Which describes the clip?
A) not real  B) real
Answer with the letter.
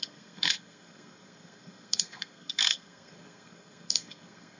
A